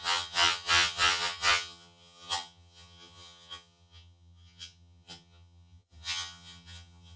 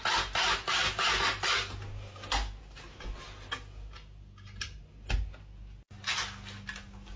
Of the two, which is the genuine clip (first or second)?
second